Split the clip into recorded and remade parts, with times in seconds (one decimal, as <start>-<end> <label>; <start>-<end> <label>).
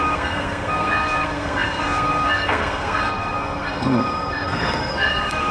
0.0-5.5 remade